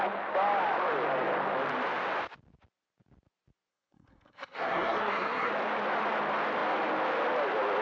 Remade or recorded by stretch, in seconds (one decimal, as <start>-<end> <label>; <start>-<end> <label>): 0.0-3.7 recorded; 3.7-5.5 remade; 5.5-7.8 recorded